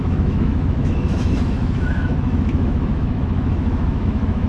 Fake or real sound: fake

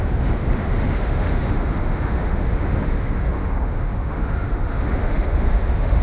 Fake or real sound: fake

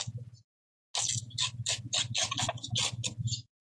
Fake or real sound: real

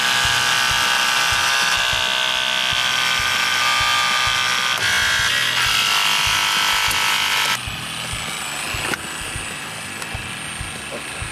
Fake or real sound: real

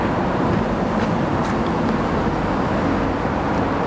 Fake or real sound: real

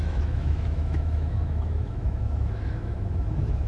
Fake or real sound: fake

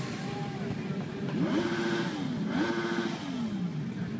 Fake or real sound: real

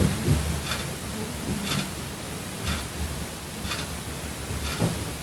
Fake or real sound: real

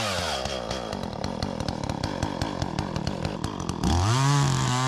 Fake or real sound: real